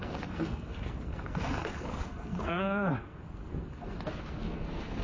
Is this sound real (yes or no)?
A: no